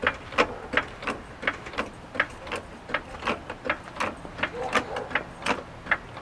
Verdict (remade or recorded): recorded